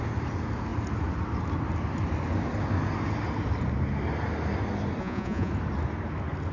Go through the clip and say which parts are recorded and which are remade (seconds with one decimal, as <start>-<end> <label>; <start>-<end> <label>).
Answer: 0.0-5.0 recorded; 5.0-5.5 remade; 5.5-6.5 recorded